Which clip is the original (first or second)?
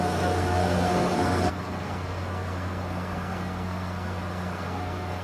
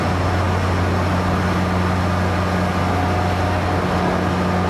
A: second